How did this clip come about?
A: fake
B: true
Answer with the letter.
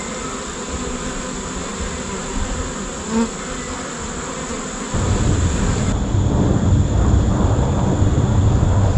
B